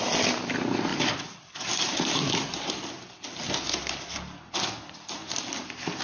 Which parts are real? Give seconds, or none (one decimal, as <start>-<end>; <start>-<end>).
0.0-6.0